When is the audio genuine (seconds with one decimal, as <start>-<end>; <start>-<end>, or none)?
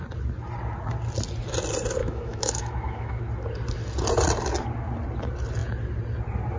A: 0.0-2.0; 3.2-6.6